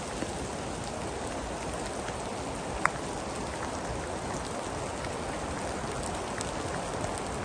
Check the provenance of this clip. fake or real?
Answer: real